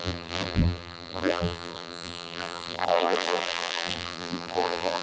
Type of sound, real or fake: fake